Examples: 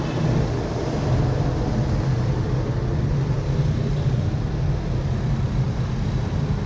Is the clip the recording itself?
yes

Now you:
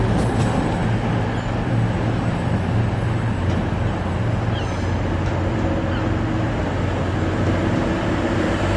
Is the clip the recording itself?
yes